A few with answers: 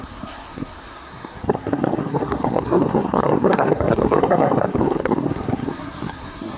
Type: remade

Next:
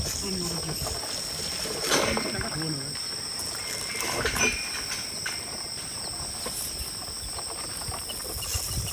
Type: recorded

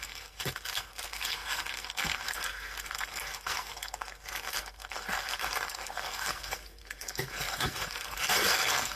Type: remade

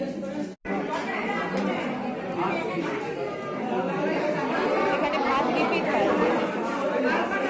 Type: recorded